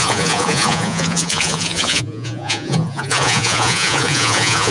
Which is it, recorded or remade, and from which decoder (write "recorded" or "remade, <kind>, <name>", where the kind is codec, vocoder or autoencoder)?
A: remade, vocoder, Vocos